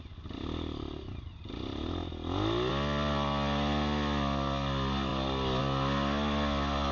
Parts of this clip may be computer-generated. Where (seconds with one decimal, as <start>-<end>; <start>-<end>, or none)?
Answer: none